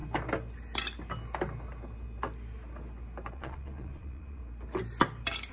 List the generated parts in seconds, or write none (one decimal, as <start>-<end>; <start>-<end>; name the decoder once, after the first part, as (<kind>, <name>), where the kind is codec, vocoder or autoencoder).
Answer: 3.3-4.4 (vocoder, Vocos)